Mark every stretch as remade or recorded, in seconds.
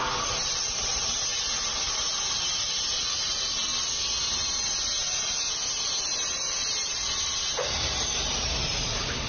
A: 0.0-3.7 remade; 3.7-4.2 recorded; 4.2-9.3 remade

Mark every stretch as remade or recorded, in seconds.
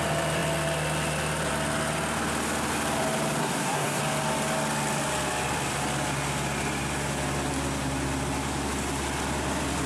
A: 0.0-3.4 recorded; 3.4-4.0 remade; 4.0-9.9 recorded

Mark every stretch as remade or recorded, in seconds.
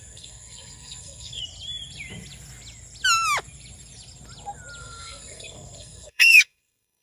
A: 0.0-1.4 remade; 1.4-4.8 recorded; 4.8-7.0 remade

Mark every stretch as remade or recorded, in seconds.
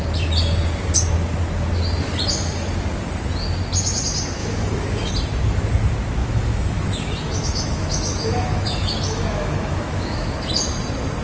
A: 0.0-4.4 recorded; 4.4-5.1 remade; 5.1-6.2 recorded; 6.2-10.5 remade; 10.5-11.2 recorded